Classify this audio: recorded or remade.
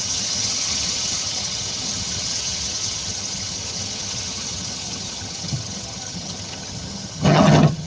remade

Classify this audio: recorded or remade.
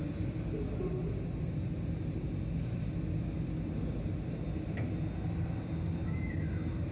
recorded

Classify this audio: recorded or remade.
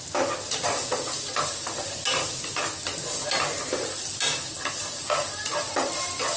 recorded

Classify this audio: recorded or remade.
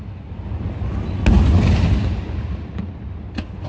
recorded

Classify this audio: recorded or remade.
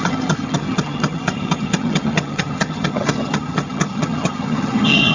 remade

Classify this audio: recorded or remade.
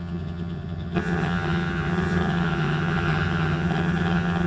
remade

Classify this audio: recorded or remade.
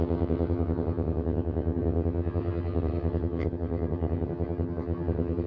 remade